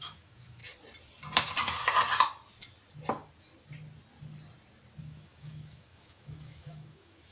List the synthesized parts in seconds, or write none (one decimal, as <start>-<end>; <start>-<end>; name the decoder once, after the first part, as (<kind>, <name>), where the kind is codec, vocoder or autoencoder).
0.0-0.6 (autoencoder, DAC-VAE); 5.0-7.3